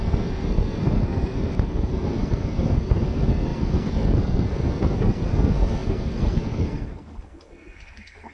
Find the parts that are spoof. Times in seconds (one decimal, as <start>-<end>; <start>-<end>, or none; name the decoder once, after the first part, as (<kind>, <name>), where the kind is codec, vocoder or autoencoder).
0.0-8.3 (codec, SNAC)